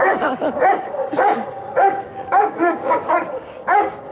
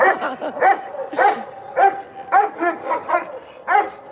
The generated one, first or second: first